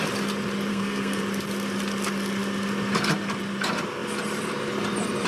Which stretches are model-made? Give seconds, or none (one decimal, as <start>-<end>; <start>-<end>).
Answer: 0.7-1.2